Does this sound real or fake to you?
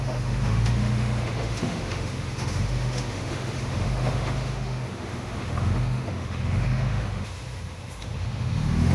fake